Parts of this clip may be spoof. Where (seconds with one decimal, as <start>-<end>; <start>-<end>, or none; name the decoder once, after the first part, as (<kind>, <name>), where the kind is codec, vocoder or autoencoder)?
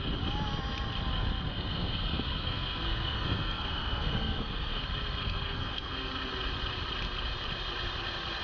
1.5-4.8 (codec, SNAC); 5.2-6.1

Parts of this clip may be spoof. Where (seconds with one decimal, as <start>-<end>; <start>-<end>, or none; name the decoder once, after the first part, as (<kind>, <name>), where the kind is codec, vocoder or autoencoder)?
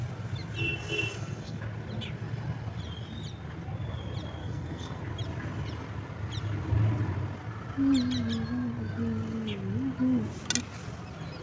1.1-1.6 (codec, SNAC); 4.4-5.0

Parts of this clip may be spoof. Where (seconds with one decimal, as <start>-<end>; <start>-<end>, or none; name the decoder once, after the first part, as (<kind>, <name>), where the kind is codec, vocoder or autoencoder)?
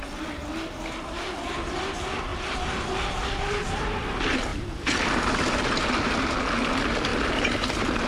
4.5-5.9 (vocoder, BigVGAN v2); 7.1-8.1